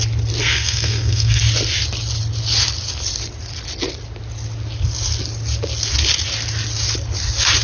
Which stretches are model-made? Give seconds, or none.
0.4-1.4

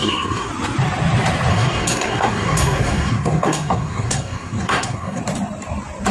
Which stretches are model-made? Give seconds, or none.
0.0-0.5; 1.5-5.2